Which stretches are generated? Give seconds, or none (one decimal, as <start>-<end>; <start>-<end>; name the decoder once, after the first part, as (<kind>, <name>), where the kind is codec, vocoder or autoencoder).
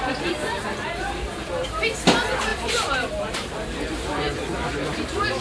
2.5-3.3 (vocoder, BigVGAN v2)